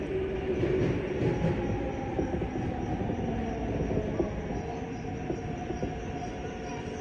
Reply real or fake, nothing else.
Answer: real